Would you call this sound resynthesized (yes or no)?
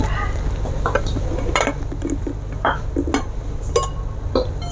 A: no